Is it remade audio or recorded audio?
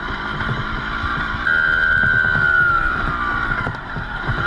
recorded